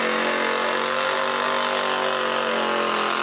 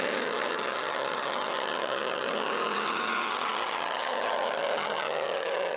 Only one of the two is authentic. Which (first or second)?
first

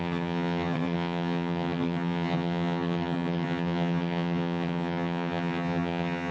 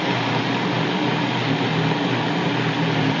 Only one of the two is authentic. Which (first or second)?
second